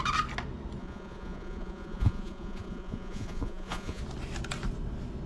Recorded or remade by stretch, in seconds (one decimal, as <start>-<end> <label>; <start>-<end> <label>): 0.0-0.8 recorded; 0.8-4.0 remade; 4.0-5.3 recorded